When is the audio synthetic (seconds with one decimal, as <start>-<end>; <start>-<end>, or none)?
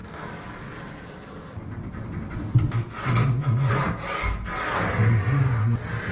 none